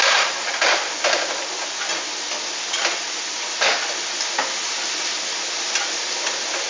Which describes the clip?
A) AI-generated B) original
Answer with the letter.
B